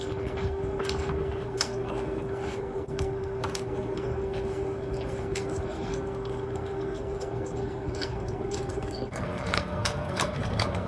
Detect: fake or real fake